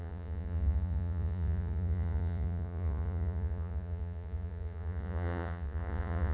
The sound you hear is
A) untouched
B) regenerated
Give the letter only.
B